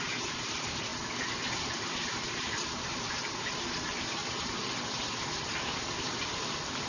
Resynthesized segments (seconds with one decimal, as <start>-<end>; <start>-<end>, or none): 0.0-0.9; 2.0-4.2; 6.4-6.9